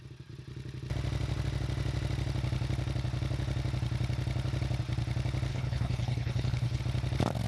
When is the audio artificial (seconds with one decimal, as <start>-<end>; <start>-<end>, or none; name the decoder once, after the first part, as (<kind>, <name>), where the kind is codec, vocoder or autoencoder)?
5.5-6.8 (codec, HILCodec)